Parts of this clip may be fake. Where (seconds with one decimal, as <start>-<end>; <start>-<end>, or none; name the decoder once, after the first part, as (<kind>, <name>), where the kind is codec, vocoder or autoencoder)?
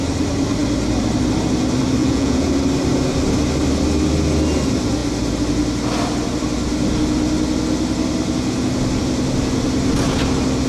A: 2.0-2.5 (vocoder, Vocos)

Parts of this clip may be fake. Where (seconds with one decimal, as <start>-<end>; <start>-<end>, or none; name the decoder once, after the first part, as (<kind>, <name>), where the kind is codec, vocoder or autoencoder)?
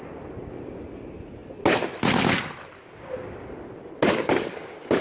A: none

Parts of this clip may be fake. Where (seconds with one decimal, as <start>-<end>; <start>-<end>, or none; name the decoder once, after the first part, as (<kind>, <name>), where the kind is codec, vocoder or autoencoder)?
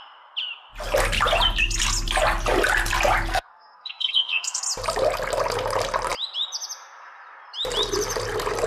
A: 3.3-4.6 (codec, SNAC)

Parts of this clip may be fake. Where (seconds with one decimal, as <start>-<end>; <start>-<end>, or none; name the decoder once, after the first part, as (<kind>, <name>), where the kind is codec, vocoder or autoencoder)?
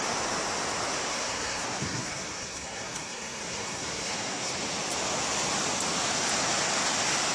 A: 1.1-4.5 (codec, SNAC)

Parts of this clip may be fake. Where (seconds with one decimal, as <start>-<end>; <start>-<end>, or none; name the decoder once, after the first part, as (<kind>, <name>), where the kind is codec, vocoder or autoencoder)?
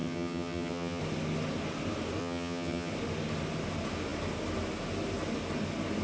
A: 0.0-1.0 (vocoder, HiFi-GAN); 2.2-2.9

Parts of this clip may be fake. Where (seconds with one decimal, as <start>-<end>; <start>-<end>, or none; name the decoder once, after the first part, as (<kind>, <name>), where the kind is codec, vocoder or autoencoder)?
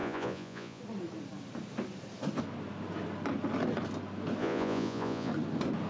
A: 0.0-0.8 (vocoder, Vocos); 4.4-5.3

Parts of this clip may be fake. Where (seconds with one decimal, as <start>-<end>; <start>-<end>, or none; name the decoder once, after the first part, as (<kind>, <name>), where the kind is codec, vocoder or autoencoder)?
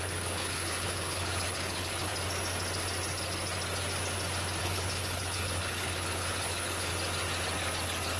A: 0.0-2.1 (codec, HILCodec); 4.6-6.9